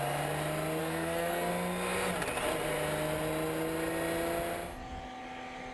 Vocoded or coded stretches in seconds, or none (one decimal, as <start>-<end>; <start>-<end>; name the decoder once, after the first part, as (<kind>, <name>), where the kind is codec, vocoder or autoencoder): 0.8-1.5 (codec, SNAC)

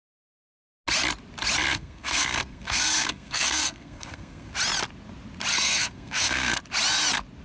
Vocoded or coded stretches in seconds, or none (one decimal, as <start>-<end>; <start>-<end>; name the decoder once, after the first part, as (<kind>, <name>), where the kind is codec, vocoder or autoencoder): 1.7-4.5 (codec, SNAC); 5.5-6.6